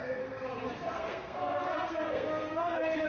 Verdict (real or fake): fake